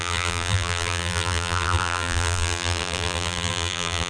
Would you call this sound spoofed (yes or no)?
yes